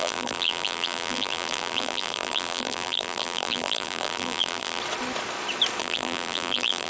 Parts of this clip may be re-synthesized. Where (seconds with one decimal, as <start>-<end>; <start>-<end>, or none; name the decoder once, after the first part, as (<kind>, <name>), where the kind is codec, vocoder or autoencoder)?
0.0-4.8 (vocoder, BigVGAN v2); 5.8-6.9